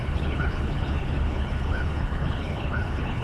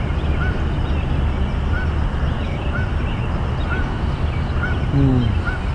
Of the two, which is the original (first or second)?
second